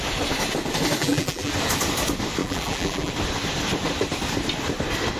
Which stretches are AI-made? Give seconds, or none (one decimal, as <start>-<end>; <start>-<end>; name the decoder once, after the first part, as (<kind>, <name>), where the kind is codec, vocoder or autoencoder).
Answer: 1.0-1.5 (vocoder, BigVGAN v2); 2.4-3.1